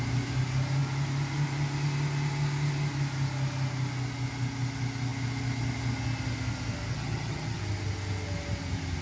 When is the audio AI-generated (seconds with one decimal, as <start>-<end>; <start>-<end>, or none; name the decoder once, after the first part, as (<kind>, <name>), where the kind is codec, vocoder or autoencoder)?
6.9-7.6 (vocoder, HiFi-GAN)